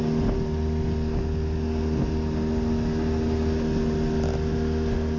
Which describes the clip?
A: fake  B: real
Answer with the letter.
B